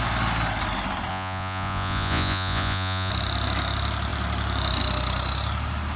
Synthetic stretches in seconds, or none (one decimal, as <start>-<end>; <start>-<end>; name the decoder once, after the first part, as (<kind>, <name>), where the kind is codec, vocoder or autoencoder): 1.1-3.1 (vocoder, Vocos)